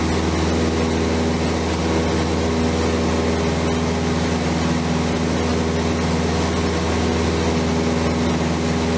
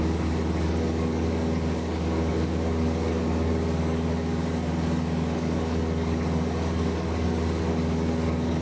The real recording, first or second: first